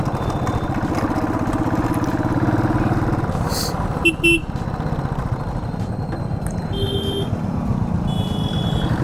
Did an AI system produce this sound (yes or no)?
no